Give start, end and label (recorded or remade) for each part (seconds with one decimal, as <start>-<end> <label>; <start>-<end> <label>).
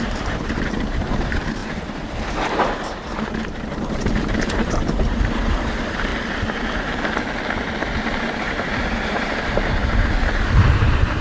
0.0-6.1 remade; 6.1-7.8 recorded; 7.8-11.2 remade